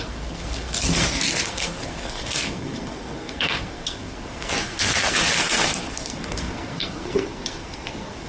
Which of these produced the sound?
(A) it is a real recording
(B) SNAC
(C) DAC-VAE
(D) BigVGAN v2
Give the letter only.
B